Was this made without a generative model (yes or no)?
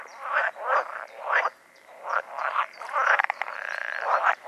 no